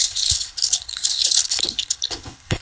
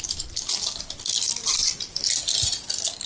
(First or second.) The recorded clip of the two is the second